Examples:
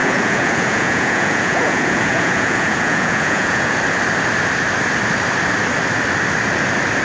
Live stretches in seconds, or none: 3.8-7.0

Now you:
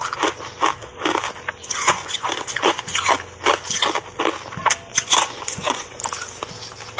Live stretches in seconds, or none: 0.0-1.6; 3.1-4.9; 6.0-7.0

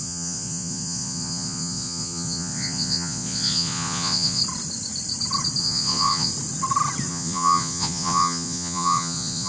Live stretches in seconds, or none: 4.4-5.6; 6.3-7.1

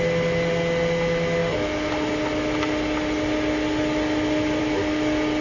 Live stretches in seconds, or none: 0.0-5.4

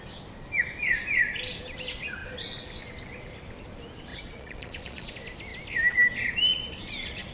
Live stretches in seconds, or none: 0.0-4.1; 5.1-7.3

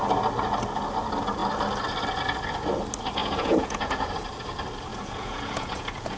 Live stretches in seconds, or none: 0.0-3.2; 4.1-4.9

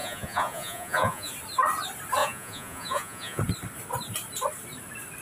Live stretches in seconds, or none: 1.3-2.2; 3.4-5.2

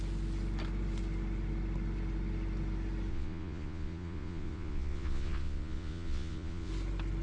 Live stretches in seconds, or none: 0.0-3.1; 6.7-7.2